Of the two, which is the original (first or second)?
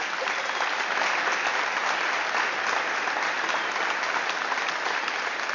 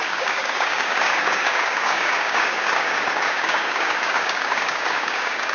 first